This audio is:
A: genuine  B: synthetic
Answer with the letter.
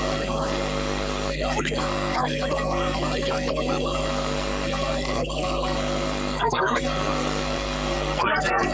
B